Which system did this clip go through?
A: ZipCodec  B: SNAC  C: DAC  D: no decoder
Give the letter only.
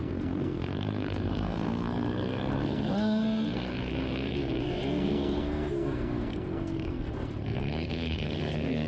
B